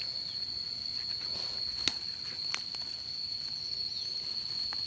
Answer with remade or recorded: recorded